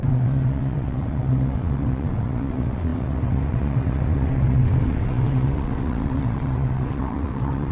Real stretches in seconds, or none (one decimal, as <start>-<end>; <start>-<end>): none

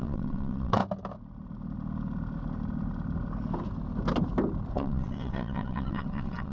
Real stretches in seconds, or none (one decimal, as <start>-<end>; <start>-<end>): 0.8-4.7